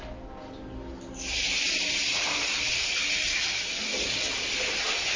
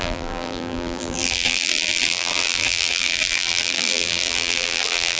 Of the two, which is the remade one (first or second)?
second